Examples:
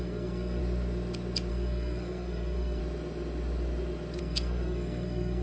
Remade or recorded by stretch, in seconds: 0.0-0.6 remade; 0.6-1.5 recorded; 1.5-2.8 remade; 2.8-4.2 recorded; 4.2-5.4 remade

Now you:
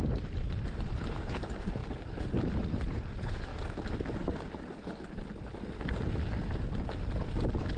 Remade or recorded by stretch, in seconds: 0.0-1.8 remade; 1.8-2.9 recorded; 2.9-3.5 remade; 3.5-7.8 recorded

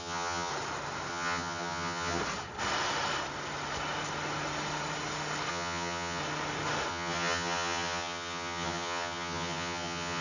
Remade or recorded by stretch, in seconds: 0.0-0.5 remade; 0.5-1.1 recorded; 1.1-2.2 remade; 2.2-5.5 recorded; 5.5-6.2 remade; 6.2-6.9 recorded; 6.9-10.2 remade